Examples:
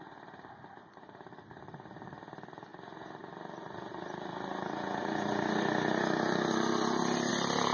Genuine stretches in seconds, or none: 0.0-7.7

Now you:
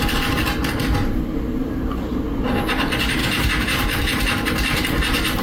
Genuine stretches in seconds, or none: 0.0-1.6; 2.2-3.2

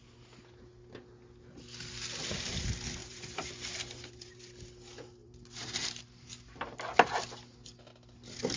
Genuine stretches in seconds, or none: 0.0-3.0; 4.4-5.2; 6.0-8.6

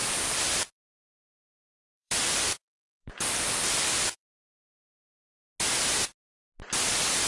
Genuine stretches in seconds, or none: 5.0-7.3

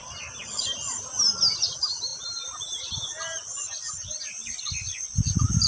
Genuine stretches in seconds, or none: none

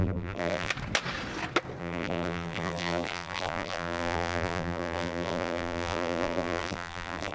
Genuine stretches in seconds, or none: 0.7-1.8

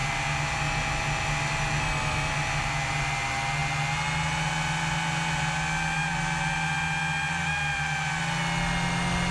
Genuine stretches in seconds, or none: 0.0-9.3

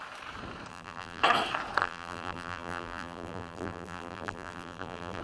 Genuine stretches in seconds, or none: 0.0-0.7; 1.2-1.8